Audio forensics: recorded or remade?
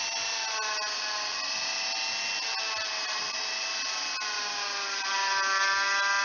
recorded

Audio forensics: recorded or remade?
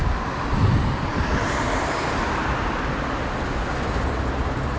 recorded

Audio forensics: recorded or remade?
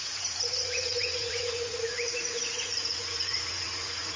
remade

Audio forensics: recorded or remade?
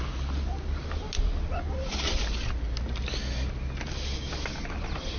recorded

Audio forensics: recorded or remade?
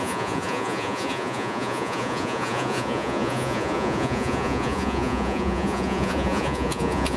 remade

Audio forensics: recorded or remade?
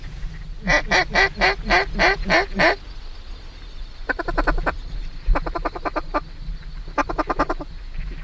recorded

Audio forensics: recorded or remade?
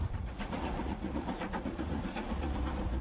remade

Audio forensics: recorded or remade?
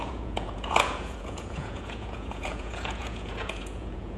remade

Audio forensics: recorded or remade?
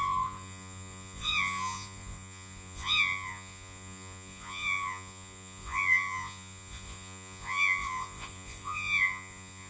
remade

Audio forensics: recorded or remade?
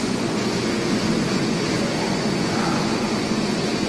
remade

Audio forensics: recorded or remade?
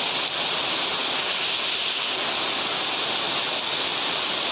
recorded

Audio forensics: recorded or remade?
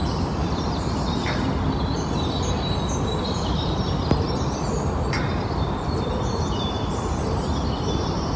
recorded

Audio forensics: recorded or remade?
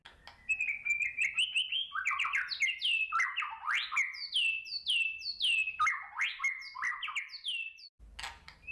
recorded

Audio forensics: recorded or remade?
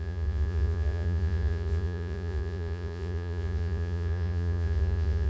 remade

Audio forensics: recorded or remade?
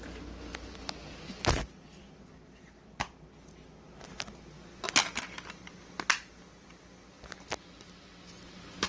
recorded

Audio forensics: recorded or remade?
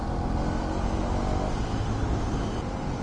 recorded